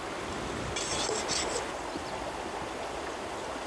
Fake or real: real